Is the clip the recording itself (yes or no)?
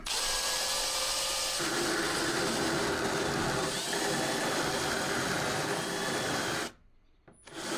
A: no